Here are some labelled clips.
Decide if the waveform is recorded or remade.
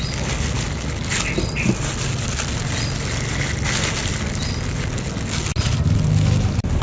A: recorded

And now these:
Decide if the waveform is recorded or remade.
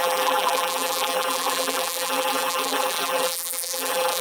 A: remade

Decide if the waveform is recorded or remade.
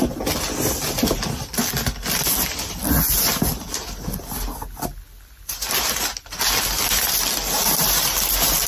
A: recorded